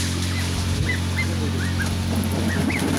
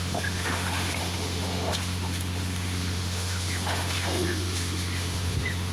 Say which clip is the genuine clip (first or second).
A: first